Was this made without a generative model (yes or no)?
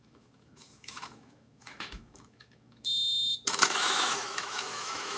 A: no